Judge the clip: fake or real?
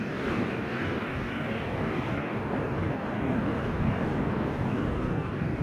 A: fake